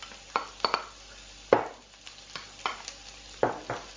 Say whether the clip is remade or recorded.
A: recorded